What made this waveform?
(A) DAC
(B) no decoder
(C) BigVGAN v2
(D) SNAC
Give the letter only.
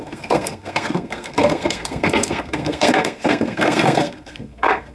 D